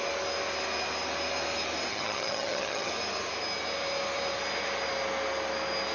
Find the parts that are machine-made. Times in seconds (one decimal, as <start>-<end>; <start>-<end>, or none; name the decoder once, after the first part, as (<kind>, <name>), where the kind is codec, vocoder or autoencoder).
1.9-2.9 (vocoder, HiFi-GAN)